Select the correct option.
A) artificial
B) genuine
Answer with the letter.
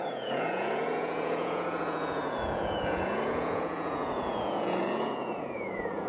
A